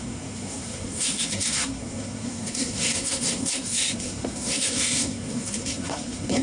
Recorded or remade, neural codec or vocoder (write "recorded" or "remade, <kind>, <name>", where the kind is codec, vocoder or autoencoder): remade, codec, SNAC